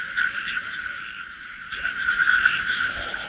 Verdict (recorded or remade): remade